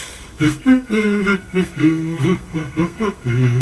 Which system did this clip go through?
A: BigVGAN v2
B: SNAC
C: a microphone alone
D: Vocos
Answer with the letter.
B